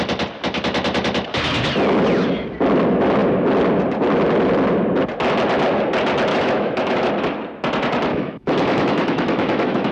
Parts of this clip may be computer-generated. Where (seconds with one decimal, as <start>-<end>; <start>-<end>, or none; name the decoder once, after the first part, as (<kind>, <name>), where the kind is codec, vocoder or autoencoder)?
6.3-7.1 (autoencoder, DAC-VAE); 8.1-9.9